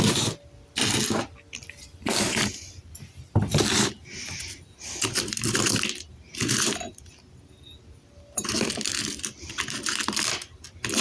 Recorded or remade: recorded